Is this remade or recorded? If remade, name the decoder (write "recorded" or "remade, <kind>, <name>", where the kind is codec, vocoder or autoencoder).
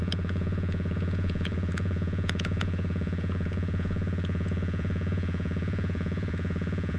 remade, vocoder, Vocos